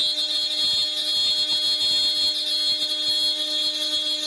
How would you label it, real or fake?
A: real